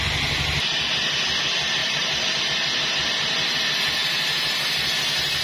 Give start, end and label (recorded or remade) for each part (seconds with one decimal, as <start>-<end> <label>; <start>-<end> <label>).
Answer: 0.0-1.8 recorded; 1.8-2.4 remade; 2.4-5.4 recorded